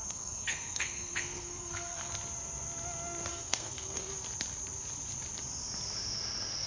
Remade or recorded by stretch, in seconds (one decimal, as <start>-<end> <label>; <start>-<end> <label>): 0.0-2.1 remade; 2.1-3.3 recorded; 3.3-4.1 remade; 4.1-6.7 recorded